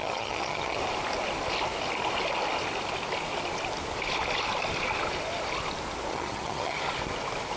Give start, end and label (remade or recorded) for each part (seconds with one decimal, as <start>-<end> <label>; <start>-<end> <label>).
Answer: 0.0-0.8 remade; 0.8-6.1 recorded; 6.1-6.8 remade; 6.8-7.6 recorded